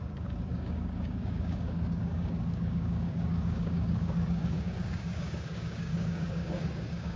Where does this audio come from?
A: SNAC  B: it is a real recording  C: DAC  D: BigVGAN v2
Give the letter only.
C